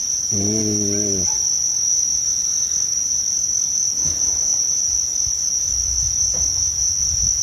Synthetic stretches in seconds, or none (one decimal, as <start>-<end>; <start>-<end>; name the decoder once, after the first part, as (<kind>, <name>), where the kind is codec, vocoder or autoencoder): 0.6-3.8 (vocoder, BigVGAN v2); 4.5-5.4